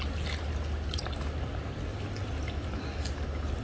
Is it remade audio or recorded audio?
recorded